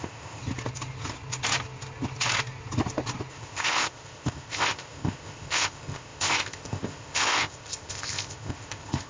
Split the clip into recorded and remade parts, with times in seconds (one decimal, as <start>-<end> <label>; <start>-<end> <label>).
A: 0.0-0.4 remade; 0.4-3.3 recorded; 3.3-9.1 remade